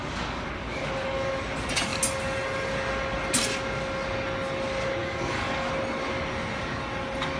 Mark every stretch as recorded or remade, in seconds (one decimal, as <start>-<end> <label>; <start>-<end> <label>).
0.0-1.3 remade; 1.3-5.0 recorded; 5.0-5.7 remade; 5.7-7.4 recorded